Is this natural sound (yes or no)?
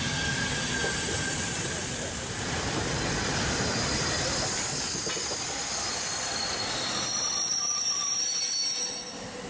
yes